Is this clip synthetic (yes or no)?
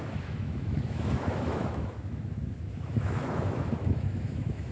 yes